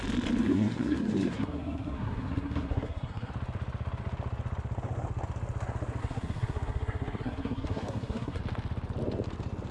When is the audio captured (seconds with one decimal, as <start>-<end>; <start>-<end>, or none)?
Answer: 0.0-0.4; 3.3-6.0; 8.4-9.7